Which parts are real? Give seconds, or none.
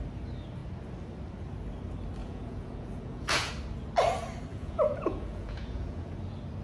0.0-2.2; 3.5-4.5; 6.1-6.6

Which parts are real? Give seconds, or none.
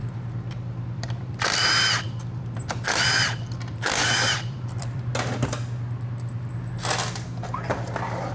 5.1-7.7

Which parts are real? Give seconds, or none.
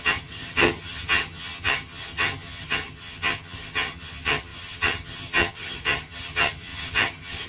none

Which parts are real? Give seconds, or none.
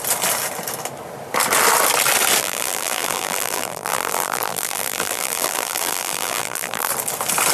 0.0-2.4; 6.9-7.5